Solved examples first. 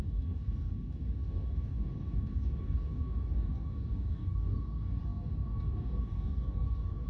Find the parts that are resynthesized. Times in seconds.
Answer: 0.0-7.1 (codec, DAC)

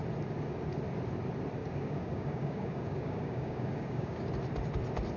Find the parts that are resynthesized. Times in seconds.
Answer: 1.6-4.3 (codec, DAC)

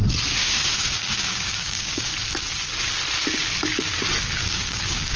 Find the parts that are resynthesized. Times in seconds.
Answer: 0.4-2.1 (codec, DAC); 4.4-5.2

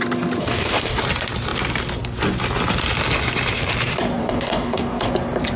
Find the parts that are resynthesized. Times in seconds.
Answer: 0.4-1.0 (codec, DAC); 4.2-5.1

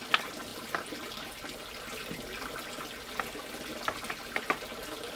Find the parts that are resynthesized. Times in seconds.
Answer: none

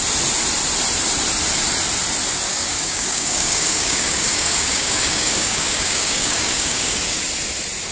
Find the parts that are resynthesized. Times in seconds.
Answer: 2.5-7.2 (codec, DAC)

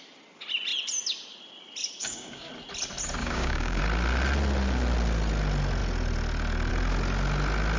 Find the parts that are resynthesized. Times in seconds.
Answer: 2.0-2.5 (codec, DAC); 3.2-3.8